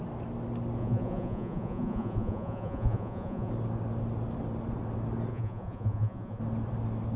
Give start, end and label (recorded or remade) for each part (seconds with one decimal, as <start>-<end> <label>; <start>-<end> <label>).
0.0-0.8 recorded; 0.8-3.5 remade; 3.5-5.3 recorded; 5.3-6.4 remade; 6.4-7.2 recorded